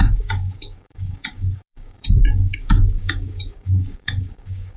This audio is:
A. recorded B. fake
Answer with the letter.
B